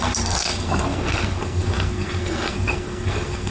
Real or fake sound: fake